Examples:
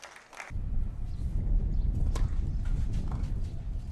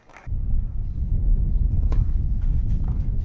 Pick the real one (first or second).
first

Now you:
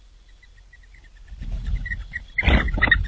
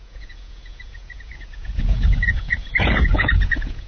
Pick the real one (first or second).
first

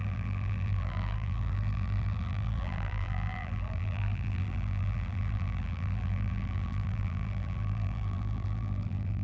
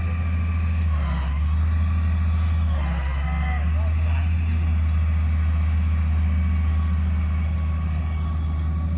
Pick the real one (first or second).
second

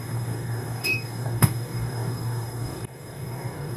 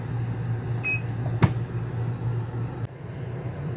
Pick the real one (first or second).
second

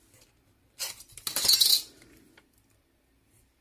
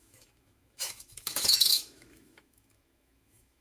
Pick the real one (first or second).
first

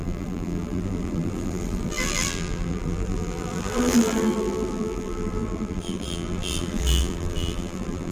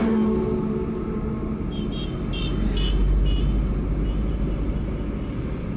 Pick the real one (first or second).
second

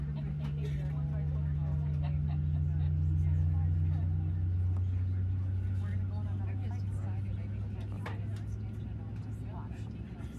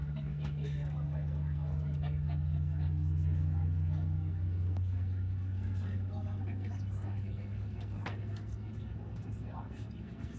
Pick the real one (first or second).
first